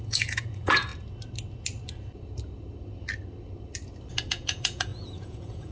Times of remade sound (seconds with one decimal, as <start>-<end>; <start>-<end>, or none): 0.0-0.9; 4.3-5.7